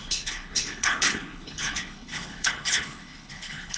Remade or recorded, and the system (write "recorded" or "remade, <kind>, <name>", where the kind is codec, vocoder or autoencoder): remade, codec, HILCodec